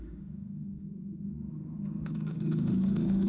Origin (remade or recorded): remade